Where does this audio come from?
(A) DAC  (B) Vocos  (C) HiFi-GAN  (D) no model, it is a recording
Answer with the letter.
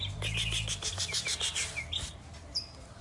D